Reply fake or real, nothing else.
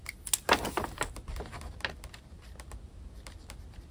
real